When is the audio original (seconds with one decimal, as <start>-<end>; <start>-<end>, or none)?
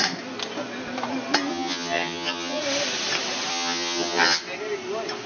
0.0-1.5; 2.6-3.5; 4.4-5.3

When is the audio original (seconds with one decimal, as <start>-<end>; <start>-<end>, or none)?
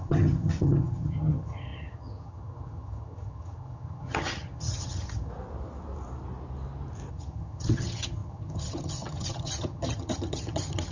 5.3-7.1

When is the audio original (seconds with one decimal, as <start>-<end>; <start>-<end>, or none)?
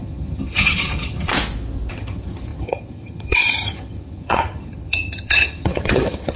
1.3-1.9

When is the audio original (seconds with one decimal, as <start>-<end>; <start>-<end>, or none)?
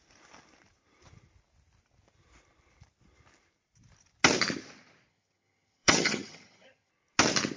0.0-5.1; 6.9-7.6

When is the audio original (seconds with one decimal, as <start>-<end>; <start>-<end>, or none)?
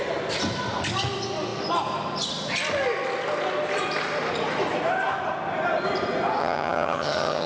0.0-6.4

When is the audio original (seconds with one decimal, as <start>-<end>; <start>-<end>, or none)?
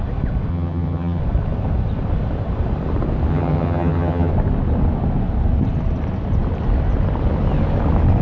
0.0-0.5; 1.2-3.3; 4.3-8.2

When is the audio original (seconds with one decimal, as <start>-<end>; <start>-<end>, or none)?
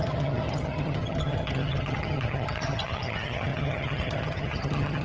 none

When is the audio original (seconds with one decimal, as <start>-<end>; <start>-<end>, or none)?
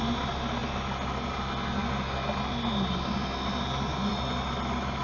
0.0-5.0